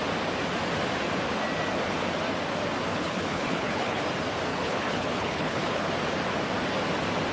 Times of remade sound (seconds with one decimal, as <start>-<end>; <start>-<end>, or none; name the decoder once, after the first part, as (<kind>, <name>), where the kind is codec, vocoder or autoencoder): 2.9-4.0 (codec, HILCodec); 4.5-5.9